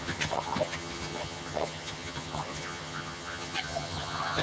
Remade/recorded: remade